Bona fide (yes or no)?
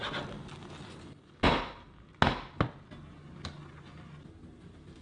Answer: yes